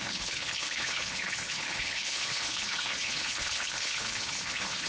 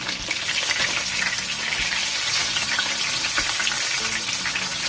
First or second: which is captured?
second